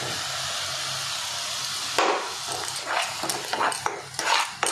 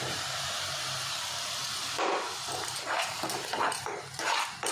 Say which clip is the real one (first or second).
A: first